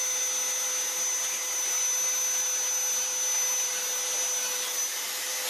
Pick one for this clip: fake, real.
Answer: real